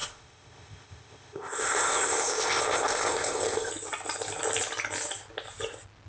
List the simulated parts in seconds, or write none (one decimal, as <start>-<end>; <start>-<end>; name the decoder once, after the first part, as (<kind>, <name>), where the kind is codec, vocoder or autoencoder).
0.0-3.7 (codec, ZipCodec)